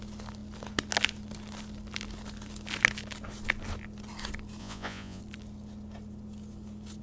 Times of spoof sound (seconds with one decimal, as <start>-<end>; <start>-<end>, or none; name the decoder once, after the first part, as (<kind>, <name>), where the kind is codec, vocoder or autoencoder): 4.6-5.2 (vocoder, Vocos)